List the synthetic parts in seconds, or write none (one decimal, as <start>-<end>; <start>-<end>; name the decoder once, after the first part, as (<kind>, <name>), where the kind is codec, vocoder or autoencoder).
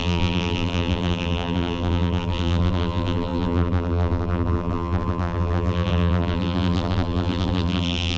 0.0-8.2 (vocoder, BigVGAN v2)